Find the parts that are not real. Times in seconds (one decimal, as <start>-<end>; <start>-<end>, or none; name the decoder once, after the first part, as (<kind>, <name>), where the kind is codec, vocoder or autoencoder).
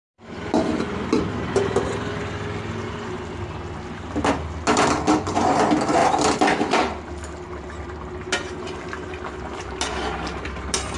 none